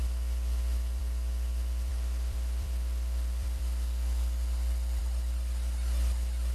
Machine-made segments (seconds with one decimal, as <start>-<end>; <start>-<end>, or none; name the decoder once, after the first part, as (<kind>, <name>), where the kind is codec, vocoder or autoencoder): 1.9-5.0 (vocoder, BigVGAN v2)